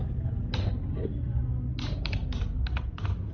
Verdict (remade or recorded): recorded